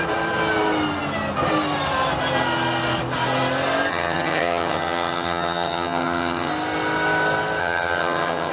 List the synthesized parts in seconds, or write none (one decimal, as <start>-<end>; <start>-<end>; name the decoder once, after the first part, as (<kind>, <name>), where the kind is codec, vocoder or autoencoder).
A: 3.9-6.5 (vocoder, HiFi-GAN); 7.6-8.5